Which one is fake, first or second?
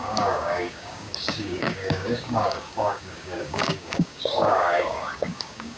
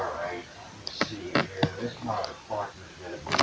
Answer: first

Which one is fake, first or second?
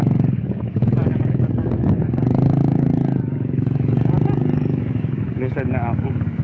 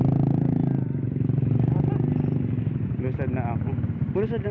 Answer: first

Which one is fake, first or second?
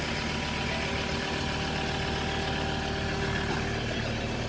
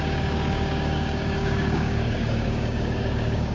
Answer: second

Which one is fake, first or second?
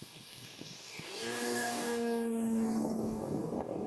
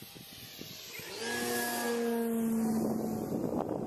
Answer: first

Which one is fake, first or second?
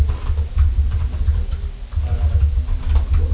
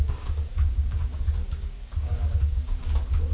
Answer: second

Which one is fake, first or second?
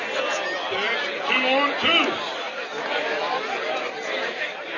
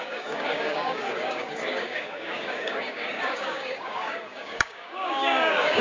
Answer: second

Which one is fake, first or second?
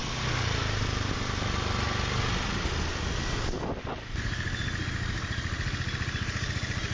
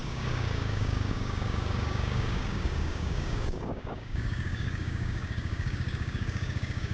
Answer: second